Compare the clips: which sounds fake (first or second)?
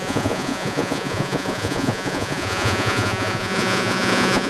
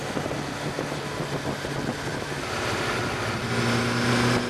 first